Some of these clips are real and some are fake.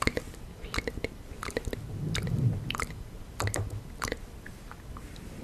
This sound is real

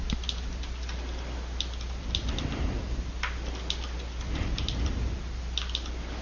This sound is real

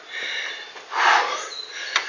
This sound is real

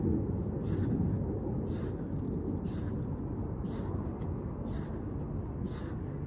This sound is real